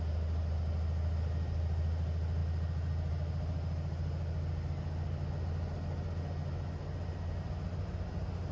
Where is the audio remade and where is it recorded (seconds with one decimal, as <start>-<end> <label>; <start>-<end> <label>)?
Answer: 0.0-8.5 recorded